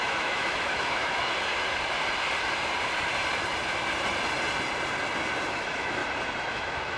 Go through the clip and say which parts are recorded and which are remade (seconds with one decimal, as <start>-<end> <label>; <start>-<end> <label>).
0.0-1.3 remade; 1.3-5.5 recorded; 5.5-6.0 remade; 6.0-6.5 recorded; 6.5-7.0 remade